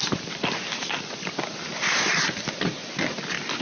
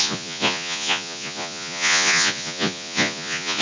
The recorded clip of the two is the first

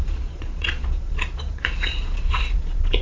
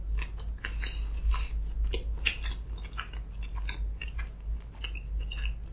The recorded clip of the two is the second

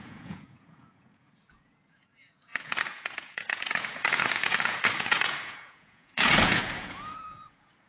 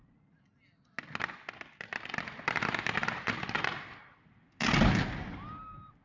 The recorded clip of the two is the second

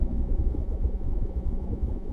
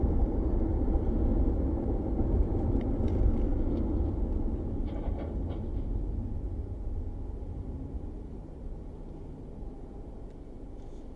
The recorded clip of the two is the second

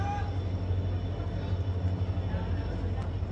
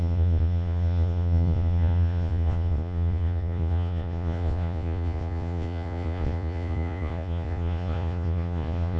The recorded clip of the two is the first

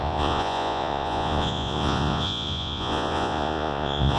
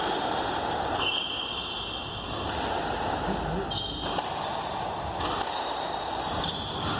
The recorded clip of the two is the second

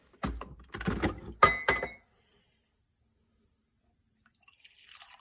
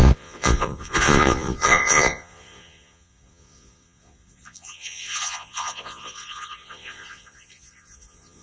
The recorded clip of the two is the first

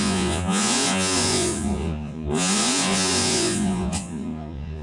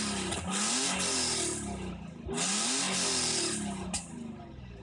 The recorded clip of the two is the second